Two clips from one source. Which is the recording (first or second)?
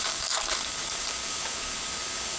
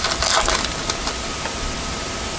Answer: second